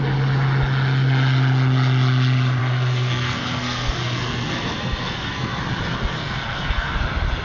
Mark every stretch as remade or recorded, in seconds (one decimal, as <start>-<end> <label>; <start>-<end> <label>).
0.0-2.6 recorded; 2.6-5.6 remade; 5.6-6.0 recorded; 6.0-7.0 remade; 7.0-7.4 recorded